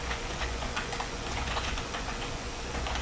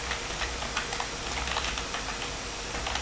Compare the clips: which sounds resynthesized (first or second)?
first